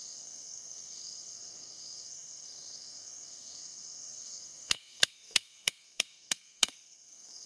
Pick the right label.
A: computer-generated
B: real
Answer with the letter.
A